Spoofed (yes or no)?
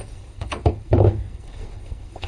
yes